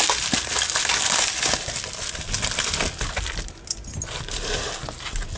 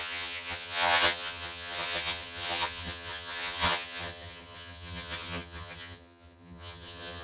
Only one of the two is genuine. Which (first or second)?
first